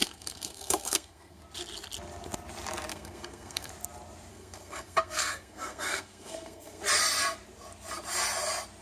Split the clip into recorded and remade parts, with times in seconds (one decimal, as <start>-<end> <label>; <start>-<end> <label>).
0.0-1.4 remade; 1.4-2.9 recorded; 2.9-3.7 remade; 3.7-4.3 recorded; 4.3-6.8 remade; 6.8-8.8 recorded